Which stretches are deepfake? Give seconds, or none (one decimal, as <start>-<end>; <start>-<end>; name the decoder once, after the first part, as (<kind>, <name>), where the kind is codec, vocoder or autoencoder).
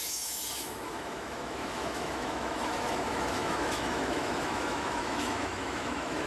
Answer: 0.0-6.3 (autoencoder, DAC-VAE)